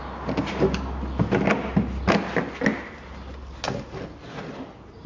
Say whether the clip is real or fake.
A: real